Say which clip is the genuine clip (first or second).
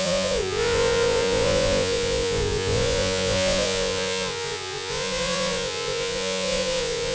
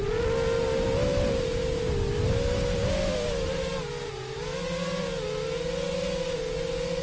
second